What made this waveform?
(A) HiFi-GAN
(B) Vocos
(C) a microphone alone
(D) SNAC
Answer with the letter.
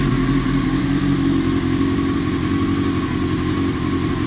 C